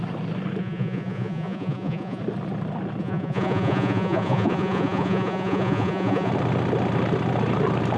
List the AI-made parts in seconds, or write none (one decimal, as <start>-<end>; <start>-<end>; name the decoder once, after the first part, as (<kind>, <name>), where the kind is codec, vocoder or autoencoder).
0.6-2.2 (vocoder, Vocos); 3.0-6.3